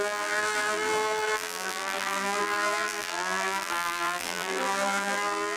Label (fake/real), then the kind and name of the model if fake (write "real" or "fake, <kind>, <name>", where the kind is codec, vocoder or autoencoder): fake, vocoder, BigVGAN v2